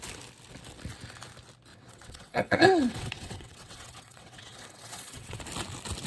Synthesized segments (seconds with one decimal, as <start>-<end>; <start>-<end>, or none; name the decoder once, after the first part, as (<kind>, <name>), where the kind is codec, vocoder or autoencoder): 1.7-5.4 (vocoder, WaveNeXt)

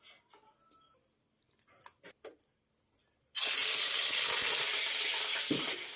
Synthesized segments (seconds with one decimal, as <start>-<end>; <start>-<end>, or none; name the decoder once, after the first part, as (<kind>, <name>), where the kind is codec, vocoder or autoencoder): none

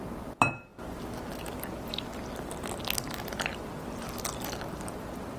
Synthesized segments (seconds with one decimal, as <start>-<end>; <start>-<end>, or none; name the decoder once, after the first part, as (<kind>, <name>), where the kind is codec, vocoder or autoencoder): none

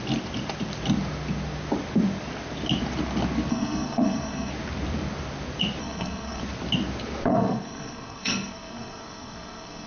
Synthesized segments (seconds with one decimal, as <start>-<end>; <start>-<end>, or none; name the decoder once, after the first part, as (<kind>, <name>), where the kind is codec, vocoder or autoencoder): 3.5-4.5 (codec, SNAC); 5.8-6.4; 7.3-9.9

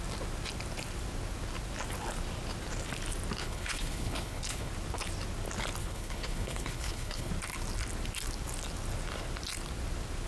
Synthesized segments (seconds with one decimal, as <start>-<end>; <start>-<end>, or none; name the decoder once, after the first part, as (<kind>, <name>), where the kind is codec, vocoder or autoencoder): 3.4-4.7 (codec, HILCodec); 5.8-7.3